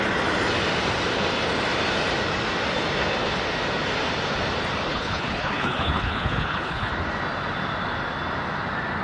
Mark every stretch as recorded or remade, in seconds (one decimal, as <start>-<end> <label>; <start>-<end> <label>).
0.0-4.9 recorded; 4.9-6.9 remade; 6.9-9.0 recorded